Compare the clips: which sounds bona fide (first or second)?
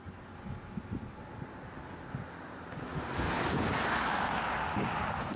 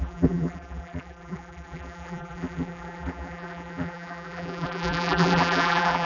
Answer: first